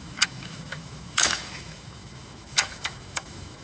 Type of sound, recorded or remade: remade